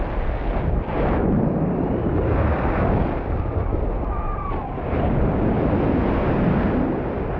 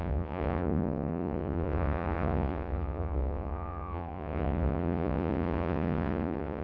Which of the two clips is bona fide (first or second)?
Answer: first